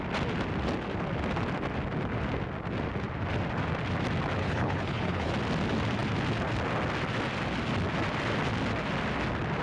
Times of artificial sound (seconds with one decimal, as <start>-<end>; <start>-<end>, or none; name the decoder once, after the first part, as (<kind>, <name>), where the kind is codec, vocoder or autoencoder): 4.4-5.3 (codec, HILCodec)